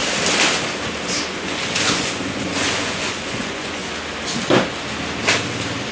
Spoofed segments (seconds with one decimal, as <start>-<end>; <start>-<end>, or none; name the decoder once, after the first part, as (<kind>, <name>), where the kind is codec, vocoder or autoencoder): 1.3-3.8 (vocoder, Vocos)